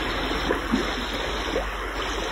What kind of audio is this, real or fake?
real